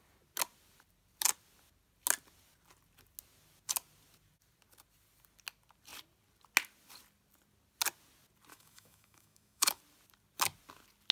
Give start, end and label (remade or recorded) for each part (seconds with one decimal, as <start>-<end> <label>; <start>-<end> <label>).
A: 0.0-8.5 recorded; 8.5-9.8 remade; 9.8-11.1 recorded